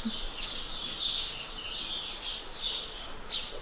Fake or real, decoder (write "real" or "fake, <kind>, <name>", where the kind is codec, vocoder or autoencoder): real